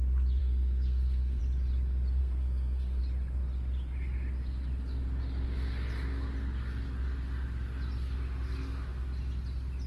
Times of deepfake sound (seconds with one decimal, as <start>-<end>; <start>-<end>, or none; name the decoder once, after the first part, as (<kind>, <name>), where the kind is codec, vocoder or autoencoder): 0.4-1.4 (codec, SNAC); 2.2-3.0

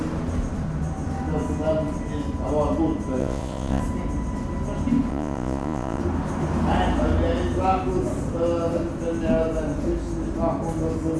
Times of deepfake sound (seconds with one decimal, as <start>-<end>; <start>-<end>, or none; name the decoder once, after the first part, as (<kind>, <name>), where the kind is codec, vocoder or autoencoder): 3.2-3.8 (vocoder, Vocos); 5.1-6.0